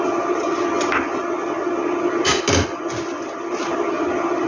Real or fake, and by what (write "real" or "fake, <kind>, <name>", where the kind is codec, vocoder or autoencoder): real